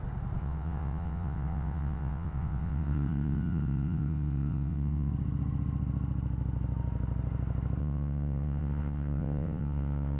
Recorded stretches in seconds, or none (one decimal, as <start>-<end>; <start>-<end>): 0.0-0.4; 5.1-7.8